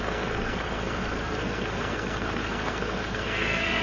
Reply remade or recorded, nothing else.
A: remade